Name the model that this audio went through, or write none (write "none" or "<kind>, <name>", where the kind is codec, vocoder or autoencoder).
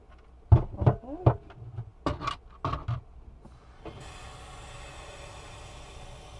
none